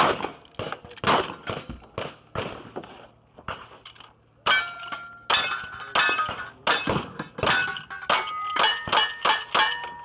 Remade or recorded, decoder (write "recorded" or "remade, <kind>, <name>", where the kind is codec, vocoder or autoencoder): recorded